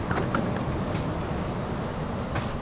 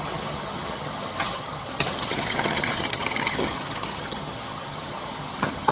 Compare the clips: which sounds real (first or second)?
first